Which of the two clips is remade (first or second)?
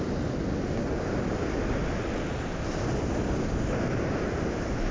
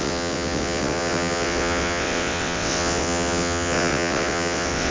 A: second